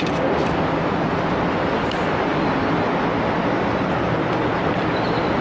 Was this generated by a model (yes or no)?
no